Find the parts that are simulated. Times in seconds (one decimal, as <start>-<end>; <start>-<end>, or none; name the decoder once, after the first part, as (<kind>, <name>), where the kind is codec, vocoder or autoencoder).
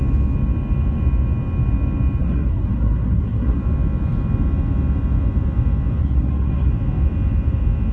2.2-3.6 (codec, SNAC); 6.0-6.7